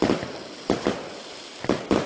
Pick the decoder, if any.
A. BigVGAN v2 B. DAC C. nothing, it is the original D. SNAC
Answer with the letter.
A